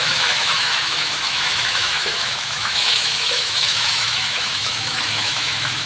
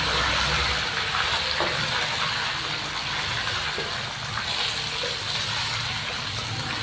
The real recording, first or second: second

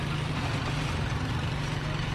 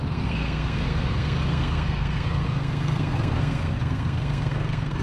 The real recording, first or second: first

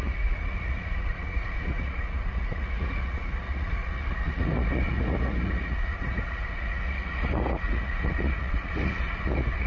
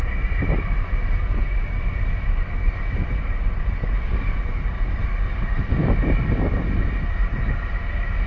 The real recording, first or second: second